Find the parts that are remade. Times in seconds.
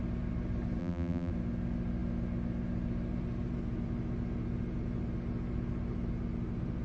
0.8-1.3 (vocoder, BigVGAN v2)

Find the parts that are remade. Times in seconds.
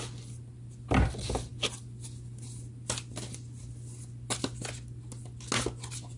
none